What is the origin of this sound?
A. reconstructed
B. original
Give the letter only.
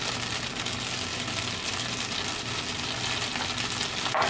B